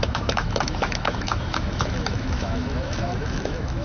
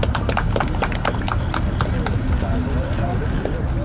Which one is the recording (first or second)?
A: second